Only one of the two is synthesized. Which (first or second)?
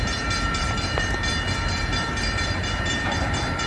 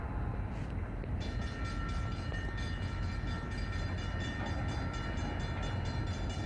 first